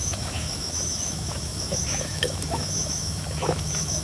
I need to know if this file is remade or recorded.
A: remade